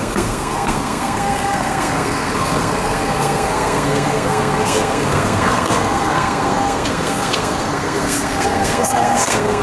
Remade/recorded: remade